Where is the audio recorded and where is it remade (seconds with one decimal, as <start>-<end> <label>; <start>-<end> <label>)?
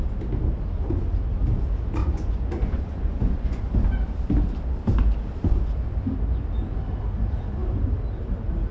0.0-2.0 recorded; 2.0-3.6 remade; 3.6-8.7 recorded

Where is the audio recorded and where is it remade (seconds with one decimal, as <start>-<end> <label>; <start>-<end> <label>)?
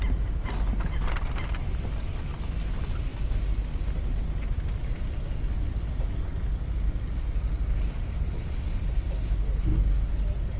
0.0-10.6 recorded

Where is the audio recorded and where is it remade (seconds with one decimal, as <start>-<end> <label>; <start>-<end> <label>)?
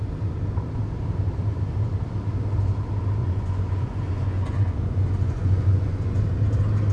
0.0-3.2 recorded; 3.2-6.2 remade; 6.2-6.9 recorded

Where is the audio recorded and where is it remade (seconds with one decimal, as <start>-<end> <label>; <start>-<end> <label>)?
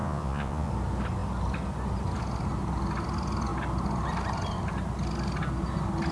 0.0-0.7 remade; 0.7-6.1 recorded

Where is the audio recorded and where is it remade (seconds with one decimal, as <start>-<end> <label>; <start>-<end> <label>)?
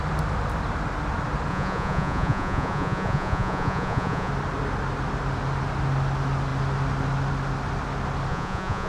0.0-1.5 recorded; 1.5-4.3 remade; 4.3-8.3 recorded; 8.3-8.9 remade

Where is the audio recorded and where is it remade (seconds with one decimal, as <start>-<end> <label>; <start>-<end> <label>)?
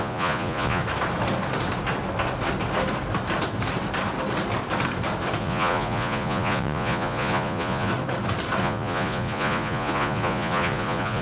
0.0-0.8 remade; 0.8-5.4 recorded; 5.4-7.9 remade; 7.9-8.6 recorded; 8.6-11.2 remade